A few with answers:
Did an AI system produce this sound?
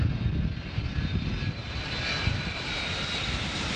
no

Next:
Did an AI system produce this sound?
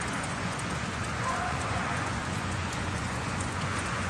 yes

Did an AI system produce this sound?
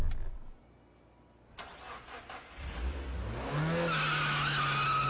no